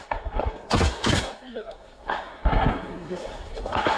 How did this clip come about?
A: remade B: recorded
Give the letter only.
A